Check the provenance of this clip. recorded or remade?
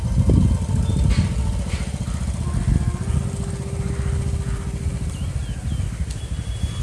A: recorded